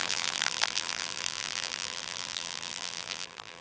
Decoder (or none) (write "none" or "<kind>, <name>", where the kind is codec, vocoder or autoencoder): vocoder, BigVGAN v2